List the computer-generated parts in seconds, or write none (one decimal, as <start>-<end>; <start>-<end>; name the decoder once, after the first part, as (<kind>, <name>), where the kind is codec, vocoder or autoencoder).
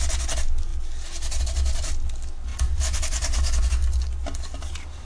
none